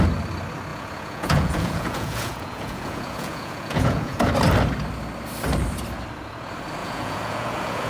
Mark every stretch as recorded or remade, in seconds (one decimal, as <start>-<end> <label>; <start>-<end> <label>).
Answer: 0.0-0.7 recorded; 0.7-4.3 remade; 4.3-6.8 recorded; 6.8-7.9 remade